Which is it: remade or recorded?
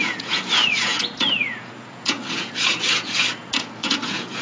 remade